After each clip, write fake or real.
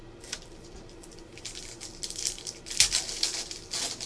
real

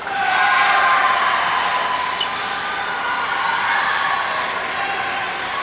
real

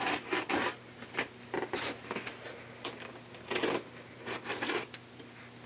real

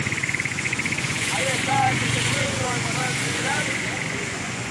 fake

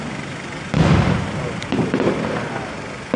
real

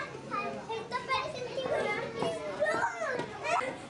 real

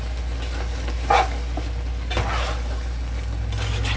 real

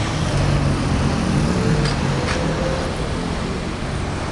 real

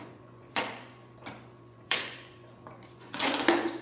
fake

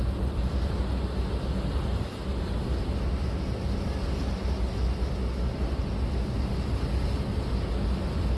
real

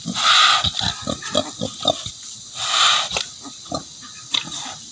real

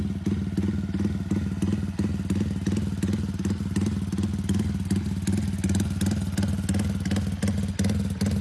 real